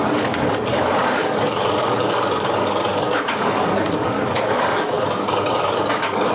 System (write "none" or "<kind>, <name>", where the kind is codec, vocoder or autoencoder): codec, DAC